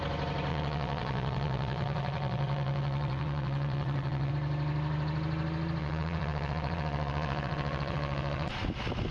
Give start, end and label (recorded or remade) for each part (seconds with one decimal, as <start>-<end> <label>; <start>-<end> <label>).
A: 0.0-0.5 recorded; 0.5-4.3 remade; 4.3-5.8 recorded; 5.8-8.5 remade; 8.5-9.1 recorded